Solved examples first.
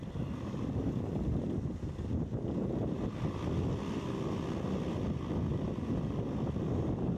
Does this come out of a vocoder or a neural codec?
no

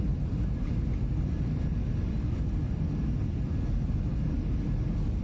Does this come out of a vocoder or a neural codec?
no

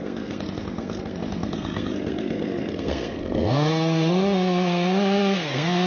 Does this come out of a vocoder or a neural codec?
yes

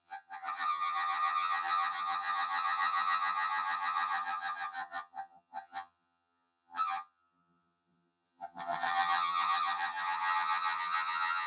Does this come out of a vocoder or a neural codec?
yes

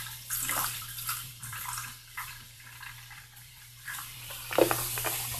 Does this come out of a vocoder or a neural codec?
yes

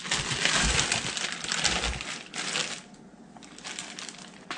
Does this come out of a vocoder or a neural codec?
no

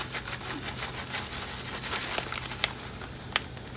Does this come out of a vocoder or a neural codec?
no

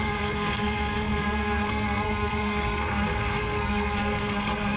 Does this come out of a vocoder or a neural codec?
yes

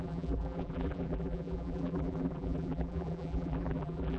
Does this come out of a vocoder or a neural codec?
yes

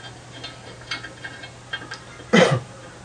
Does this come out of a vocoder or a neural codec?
no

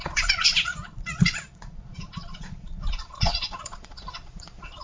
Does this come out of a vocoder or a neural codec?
yes